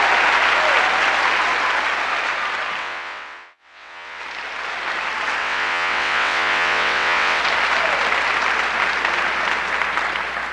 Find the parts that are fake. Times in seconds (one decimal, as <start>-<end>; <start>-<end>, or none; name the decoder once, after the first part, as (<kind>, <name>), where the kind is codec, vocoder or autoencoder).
2.8-4.2 (vocoder, WaveNeXt); 5.4-7.4